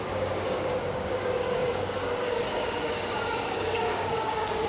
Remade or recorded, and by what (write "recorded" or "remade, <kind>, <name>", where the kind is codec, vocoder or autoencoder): remade, codec, DAC